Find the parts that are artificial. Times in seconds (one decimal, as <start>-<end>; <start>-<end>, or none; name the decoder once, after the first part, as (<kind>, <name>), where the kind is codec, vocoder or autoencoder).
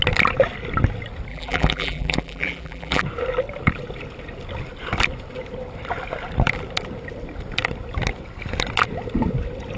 1.3-3.0 (vocoder, BigVGAN v2)